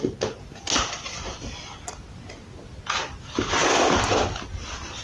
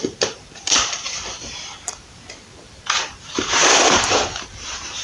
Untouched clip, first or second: first